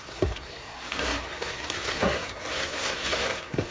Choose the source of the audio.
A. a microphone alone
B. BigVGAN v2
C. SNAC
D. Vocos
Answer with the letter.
C